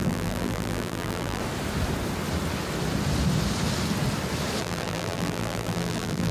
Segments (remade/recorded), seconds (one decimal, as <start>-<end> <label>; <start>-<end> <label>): 0.0-1.4 remade; 1.4-4.6 recorded; 4.6-6.3 remade